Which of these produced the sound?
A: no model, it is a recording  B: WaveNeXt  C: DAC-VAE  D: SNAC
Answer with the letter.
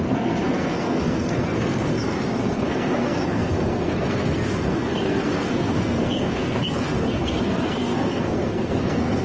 D